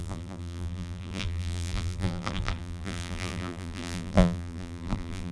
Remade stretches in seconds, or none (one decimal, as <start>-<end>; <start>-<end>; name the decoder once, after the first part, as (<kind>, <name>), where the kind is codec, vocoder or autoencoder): 0.0-5.3 (vocoder, BigVGAN v2)